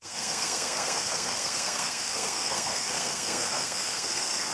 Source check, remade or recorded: remade